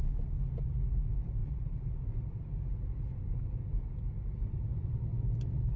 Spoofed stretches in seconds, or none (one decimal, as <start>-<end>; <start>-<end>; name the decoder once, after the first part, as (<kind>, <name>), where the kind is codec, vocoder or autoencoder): 4.7-5.8 (vocoder, BigVGAN v2)